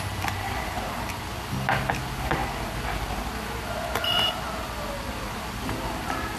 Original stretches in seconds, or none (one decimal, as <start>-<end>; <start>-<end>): 0.0-6.4